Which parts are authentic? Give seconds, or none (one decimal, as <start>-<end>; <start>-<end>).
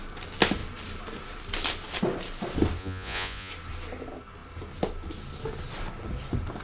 0.0-2.8; 3.5-6.6